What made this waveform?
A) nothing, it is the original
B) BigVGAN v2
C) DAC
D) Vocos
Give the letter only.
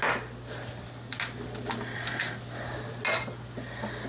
A